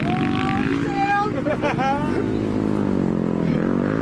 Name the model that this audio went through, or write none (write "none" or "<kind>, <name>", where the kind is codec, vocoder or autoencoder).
none